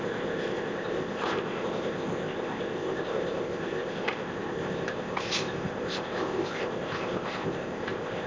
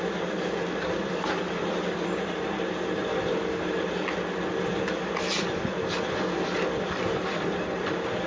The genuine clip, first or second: second